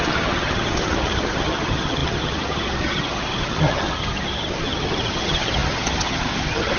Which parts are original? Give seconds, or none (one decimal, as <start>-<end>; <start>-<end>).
none